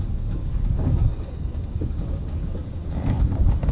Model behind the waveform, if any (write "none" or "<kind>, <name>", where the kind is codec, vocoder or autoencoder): codec, DAC